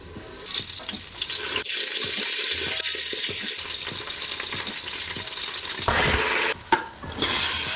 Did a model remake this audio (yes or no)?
no